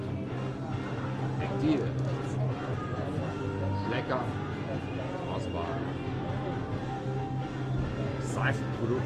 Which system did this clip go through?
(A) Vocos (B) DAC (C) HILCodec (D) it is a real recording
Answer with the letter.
D